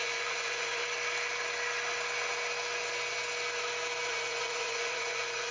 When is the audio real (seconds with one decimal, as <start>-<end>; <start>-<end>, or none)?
0.8-4.1